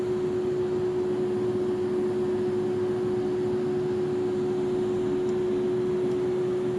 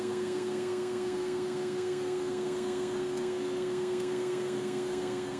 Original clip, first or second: first